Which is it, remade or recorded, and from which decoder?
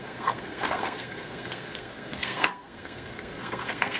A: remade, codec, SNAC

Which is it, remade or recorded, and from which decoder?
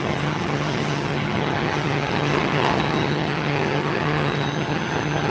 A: remade, vocoder, HiFi-GAN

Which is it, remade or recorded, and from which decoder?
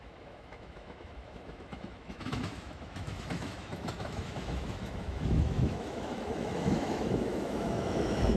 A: remade, autoencoder, DAC-VAE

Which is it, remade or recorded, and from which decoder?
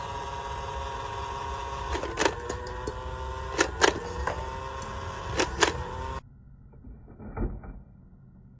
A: recorded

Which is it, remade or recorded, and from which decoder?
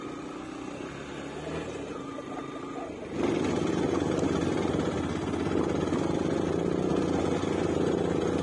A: recorded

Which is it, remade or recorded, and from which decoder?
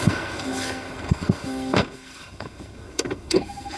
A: remade, codec, SNAC